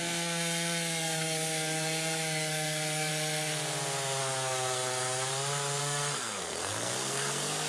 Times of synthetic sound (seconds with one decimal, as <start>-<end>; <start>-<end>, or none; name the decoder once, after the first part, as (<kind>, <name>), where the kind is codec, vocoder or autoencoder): 0.0-3.1 (codec, SNAC); 4.2-5.3; 5.8-7.7